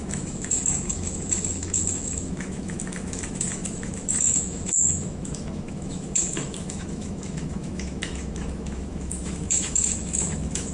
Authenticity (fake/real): fake